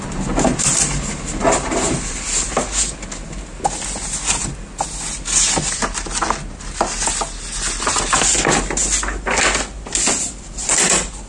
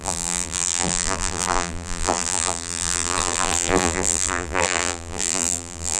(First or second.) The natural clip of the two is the first